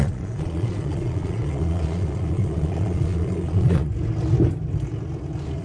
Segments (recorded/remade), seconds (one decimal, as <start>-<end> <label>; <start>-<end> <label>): 0.0-3.9 remade; 3.9-5.6 recorded